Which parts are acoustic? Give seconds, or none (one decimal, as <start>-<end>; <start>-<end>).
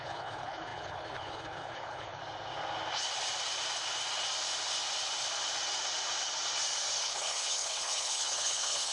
2.2-7.0